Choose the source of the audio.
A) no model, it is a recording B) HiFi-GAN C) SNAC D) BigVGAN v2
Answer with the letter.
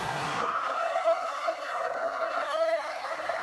C